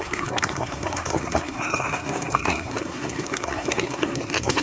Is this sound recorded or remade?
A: remade